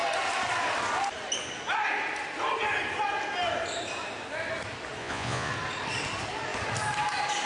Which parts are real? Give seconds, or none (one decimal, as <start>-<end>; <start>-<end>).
0.0-5.0; 5.5-7.5

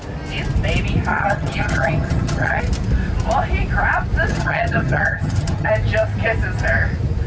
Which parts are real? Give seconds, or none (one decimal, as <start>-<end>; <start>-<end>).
0.0-1.1; 2.6-4.3; 5.7-7.3

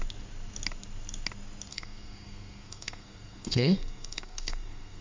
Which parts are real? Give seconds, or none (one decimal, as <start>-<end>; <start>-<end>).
0.0-1.7

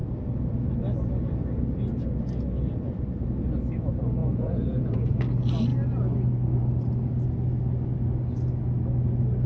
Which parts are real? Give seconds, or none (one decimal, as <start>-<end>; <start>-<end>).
0.0-4.2; 5.2-9.5

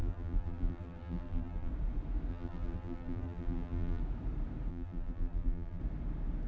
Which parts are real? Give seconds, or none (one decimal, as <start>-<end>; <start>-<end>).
1.7-2.3; 4.0-4.7; 5.8-6.5

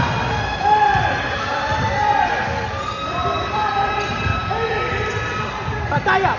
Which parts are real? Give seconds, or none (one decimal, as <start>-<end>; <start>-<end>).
0.0-1.7; 2.8-3.2; 4.9-6.4